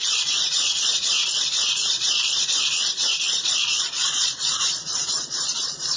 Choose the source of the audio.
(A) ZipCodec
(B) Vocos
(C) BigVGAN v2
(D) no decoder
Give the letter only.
B